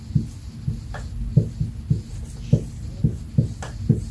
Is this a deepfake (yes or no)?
no